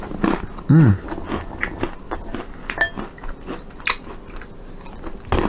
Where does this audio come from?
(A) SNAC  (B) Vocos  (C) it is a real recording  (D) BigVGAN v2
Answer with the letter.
C